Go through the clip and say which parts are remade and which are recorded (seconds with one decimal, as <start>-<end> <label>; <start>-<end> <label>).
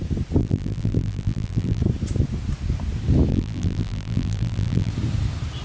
0.0-0.4 recorded; 0.4-1.8 remade; 1.8-3.3 recorded; 3.3-4.9 remade; 4.9-5.6 recorded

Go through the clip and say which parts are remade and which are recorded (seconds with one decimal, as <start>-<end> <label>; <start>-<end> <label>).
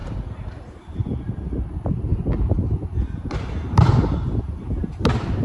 0.0-0.6 recorded; 0.6-1.1 remade; 1.1-1.7 recorded; 1.7-5.4 remade